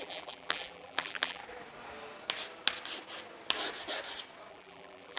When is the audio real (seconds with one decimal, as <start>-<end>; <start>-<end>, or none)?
1.4-4.5